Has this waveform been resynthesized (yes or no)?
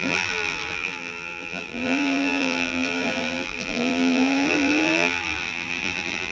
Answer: yes